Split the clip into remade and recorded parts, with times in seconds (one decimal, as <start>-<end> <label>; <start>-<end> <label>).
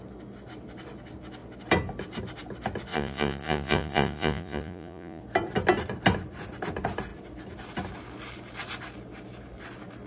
0.0-2.9 recorded; 2.9-5.2 remade; 5.2-10.1 recorded